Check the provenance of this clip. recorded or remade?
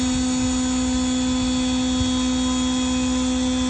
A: recorded